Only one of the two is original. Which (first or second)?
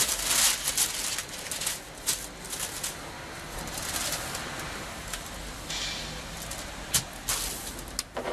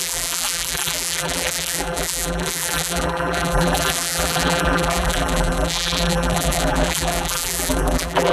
first